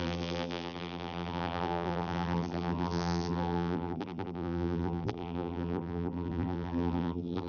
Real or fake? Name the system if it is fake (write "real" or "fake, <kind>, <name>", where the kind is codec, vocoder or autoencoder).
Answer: fake, vocoder, BigVGAN v2